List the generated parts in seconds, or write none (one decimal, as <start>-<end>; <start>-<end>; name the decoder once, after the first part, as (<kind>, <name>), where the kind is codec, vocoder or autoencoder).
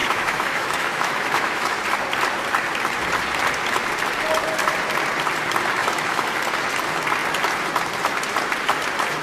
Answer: 0.0-1.8 (autoencoder, DAC-VAE); 5.8-6.3